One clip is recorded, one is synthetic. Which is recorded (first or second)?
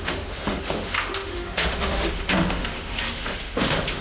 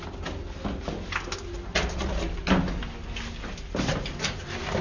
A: second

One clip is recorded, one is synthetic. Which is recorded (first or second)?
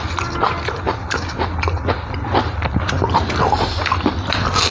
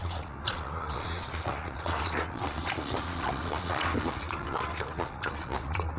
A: first